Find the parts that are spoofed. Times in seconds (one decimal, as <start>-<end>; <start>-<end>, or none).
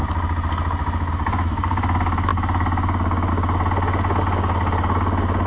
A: none